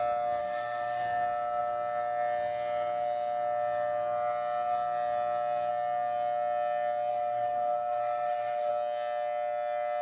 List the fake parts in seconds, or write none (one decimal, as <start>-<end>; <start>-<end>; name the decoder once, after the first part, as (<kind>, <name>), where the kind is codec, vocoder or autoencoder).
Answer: 0.4-1.0 (codec, SNAC); 7.1-8.7